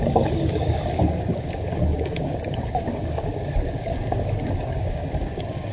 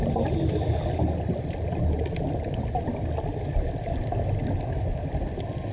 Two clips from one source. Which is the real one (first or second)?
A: second